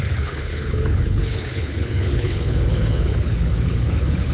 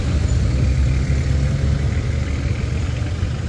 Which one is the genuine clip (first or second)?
second